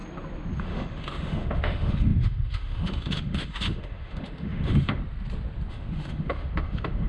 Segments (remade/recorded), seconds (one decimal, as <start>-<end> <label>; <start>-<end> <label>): 0.0-0.6 recorded; 0.6-5.0 remade; 5.0-5.7 recorded; 5.7-7.1 remade